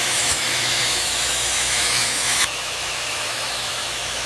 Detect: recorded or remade remade